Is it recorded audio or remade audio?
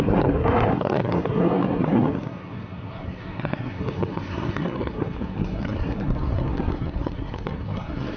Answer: remade